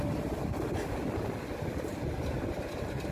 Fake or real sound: real